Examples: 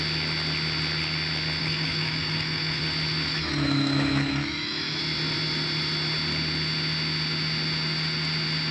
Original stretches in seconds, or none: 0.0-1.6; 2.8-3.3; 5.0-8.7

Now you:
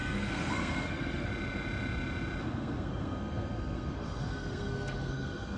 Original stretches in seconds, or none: 1.3-2.4